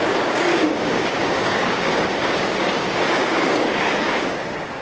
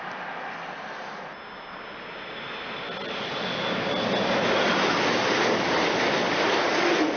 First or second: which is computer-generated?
first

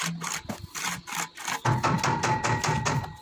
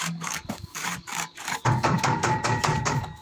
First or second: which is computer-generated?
second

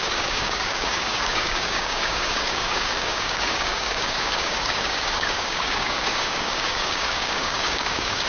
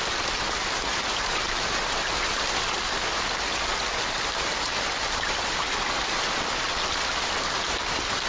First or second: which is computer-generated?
first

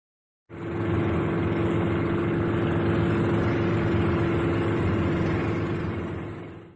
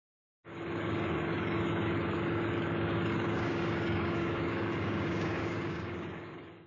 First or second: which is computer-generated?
second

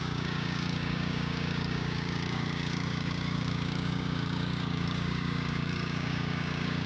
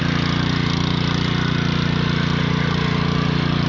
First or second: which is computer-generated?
first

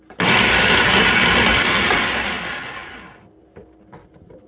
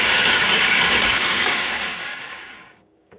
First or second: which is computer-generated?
second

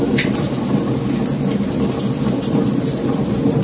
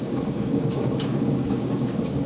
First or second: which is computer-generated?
second